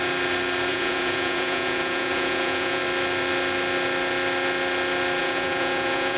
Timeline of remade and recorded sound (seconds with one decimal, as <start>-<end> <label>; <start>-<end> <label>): 0.0-0.7 recorded; 0.7-2.8 remade; 2.8-5.2 recorded; 5.2-6.2 remade